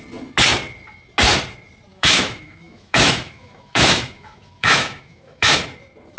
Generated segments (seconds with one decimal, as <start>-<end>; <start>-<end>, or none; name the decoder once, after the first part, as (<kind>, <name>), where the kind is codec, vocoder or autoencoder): 1.9-5.6 (autoencoder, DAC-VAE)